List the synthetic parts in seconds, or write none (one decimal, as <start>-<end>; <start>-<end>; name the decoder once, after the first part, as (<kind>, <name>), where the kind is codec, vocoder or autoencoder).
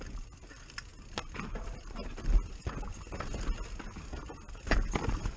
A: none